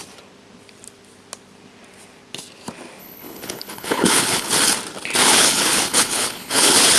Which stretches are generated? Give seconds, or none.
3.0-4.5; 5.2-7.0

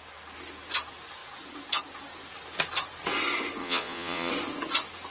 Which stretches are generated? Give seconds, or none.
3.6-4.3

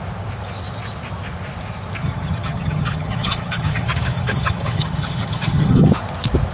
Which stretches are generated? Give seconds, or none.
2.0-5.9

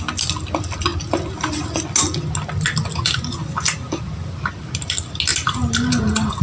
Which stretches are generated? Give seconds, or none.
none

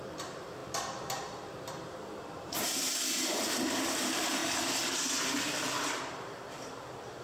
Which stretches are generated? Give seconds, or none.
0.0-4.4; 4.9-7.2

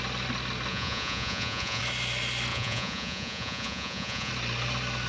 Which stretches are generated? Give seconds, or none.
0.7-1.8; 2.5-4.3

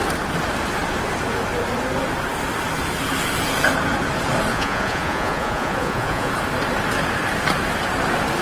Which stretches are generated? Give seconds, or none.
4.5-6.3

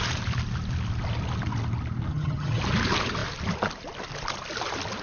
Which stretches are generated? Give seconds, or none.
2.1-2.6